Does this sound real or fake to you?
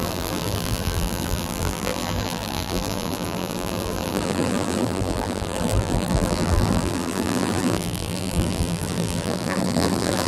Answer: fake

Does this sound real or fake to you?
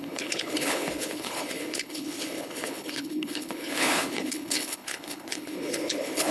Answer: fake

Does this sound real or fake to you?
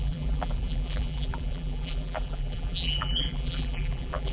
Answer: fake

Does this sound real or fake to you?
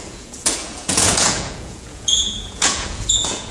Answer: fake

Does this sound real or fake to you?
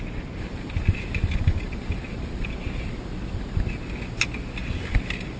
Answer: real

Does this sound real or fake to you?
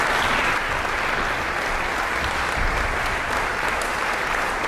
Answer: real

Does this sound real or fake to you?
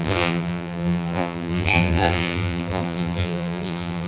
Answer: fake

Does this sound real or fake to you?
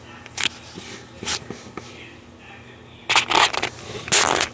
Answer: real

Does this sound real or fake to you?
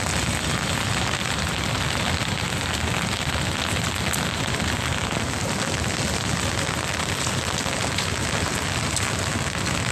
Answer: real